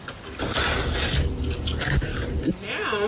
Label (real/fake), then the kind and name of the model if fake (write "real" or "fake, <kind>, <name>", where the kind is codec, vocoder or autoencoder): real